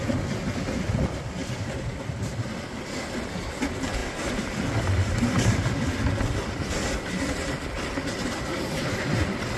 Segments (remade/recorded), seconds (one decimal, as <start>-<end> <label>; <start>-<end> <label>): 0.0-1.4 recorded; 1.4-2.8 remade; 2.8-9.6 recorded